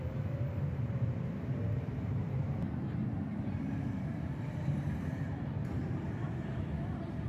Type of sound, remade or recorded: remade